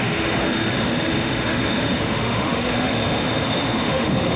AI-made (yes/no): yes